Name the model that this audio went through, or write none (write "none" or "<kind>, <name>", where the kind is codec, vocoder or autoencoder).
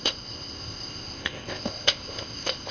codec, ZipCodec